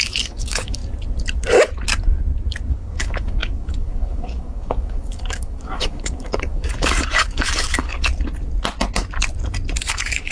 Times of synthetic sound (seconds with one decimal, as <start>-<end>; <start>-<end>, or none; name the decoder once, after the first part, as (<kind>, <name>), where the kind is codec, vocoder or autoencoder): 0.0-0.8 (codec, DAC); 2.7-8.1; 9.8-10.3